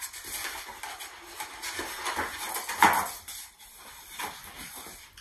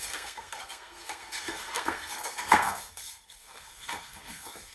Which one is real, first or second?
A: first